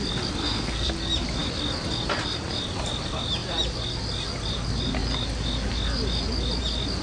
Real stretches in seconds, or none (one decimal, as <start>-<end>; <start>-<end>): 0.0-0.4; 0.9-7.0